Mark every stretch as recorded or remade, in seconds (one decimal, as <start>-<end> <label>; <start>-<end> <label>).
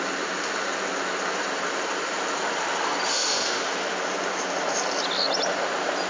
0.0-3.1 recorded; 3.1-3.6 remade; 3.6-6.1 recorded